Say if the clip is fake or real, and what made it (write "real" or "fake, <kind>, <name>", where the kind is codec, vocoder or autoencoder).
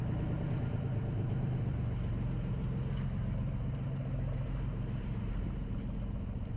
real